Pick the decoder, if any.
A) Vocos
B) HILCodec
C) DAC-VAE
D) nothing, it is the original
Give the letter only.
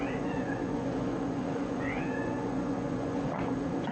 A